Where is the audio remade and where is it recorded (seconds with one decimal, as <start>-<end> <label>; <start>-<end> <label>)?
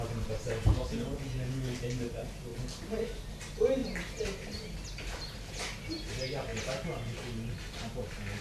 0.0-8.4 recorded